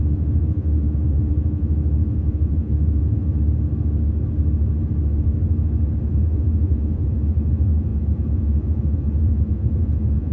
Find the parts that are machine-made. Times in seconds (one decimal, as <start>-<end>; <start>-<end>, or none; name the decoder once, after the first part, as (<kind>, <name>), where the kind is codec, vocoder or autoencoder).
0.0-3.3 (vocoder, Vocos); 6.1-10.3